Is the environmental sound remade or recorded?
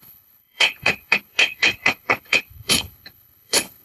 remade